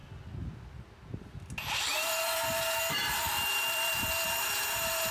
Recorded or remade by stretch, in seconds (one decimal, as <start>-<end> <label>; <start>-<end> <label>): 0.0-1.9 recorded; 1.9-5.1 remade